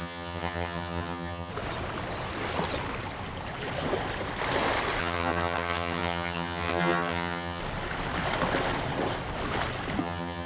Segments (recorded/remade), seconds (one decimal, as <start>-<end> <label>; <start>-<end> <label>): 0.0-1.5 remade; 1.5-5.0 recorded; 5.0-7.6 remade; 7.6-10.0 recorded; 10.0-10.5 remade